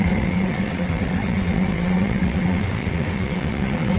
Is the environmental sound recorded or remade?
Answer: remade